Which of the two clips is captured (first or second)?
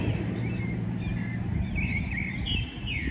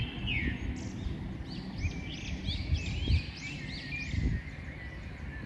second